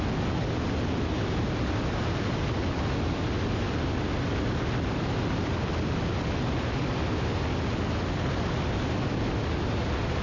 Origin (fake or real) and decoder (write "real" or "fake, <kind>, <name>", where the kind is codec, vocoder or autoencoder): real